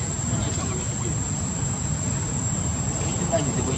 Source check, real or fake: fake